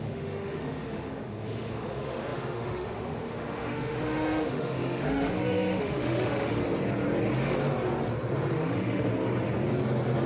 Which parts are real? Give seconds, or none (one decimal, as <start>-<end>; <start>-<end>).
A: 6.6-8.5; 9.1-10.3